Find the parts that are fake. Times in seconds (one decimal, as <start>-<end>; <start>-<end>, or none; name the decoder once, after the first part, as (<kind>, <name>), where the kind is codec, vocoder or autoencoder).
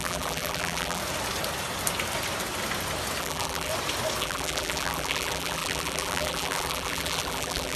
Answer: 0.0-1.0 (vocoder, BigVGAN v2); 3.2-3.7; 4.2-7.8